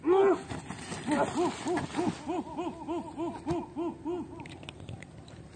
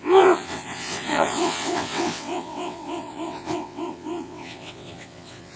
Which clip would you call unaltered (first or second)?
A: first